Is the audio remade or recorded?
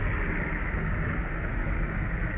recorded